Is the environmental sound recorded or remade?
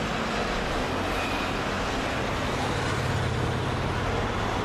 recorded